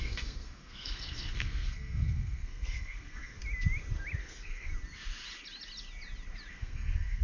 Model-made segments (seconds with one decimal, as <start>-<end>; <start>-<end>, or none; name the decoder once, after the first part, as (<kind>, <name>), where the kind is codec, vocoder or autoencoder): 0.0-3.4 (codec, SNAC); 4.2-4.7; 6.5-7.2